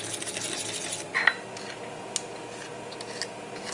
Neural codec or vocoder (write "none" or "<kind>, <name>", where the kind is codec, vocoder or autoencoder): none